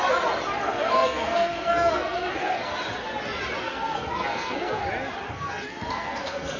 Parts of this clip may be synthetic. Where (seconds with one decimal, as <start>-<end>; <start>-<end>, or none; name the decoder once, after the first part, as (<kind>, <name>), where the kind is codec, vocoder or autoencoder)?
0.6-2.7 (codec, SNAC); 3.6-4.8; 5.3-6.6

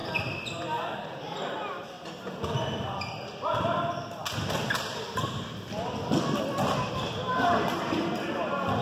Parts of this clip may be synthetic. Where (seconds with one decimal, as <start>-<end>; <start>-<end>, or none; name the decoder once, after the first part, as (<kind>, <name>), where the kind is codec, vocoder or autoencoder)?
none

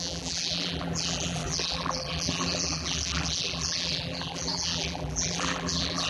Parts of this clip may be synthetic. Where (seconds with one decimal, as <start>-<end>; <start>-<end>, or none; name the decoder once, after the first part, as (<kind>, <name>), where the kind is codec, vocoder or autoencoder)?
0.0-6.1 (vocoder, BigVGAN v2)

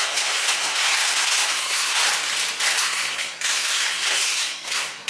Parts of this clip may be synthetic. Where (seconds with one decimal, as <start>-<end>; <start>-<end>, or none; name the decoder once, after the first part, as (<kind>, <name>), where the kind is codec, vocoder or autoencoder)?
0.0-2.0 (codec, SNAC); 2.8-5.1

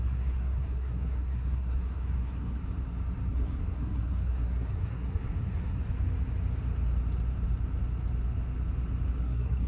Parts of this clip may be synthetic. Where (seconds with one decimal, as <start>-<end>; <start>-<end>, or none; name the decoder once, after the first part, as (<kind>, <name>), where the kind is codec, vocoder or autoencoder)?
0.0-2.6 (codec, SNAC); 3.3-5.8; 9.2-9.7

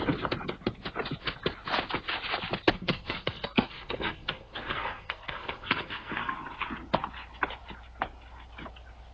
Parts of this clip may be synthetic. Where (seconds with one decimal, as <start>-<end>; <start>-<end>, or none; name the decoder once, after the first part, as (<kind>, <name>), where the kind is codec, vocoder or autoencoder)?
2.7-6.3 (codec, SNAC)